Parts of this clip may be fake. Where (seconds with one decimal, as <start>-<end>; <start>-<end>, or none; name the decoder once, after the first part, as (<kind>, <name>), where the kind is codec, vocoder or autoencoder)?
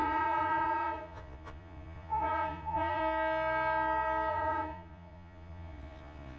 0.0-3.0 (vocoder, Vocos); 4.3-6.4